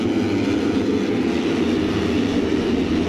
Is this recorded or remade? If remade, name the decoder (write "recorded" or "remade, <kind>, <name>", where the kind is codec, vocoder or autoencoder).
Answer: recorded